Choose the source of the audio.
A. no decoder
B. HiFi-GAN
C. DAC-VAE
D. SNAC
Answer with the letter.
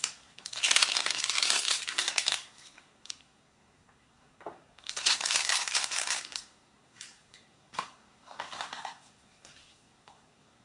D